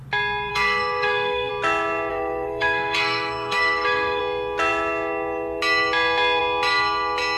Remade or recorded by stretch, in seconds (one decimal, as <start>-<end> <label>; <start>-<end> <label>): 0.0-0.5 recorded; 0.5-1.5 remade; 1.5-2.1 recorded; 2.1-4.2 remade; 4.2-7.4 recorded